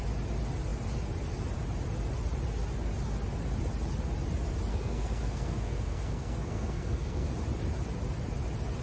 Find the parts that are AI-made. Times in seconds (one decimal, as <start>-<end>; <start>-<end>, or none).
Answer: 4.7-7.3